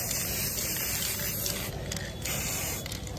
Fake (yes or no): no